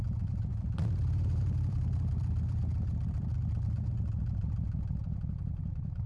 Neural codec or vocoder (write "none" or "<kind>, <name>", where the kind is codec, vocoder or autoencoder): vocoder, BigVGAN v2